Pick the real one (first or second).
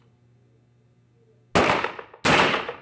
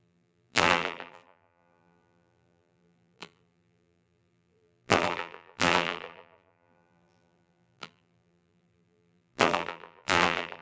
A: first